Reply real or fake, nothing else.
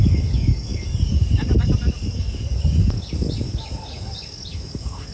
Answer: fake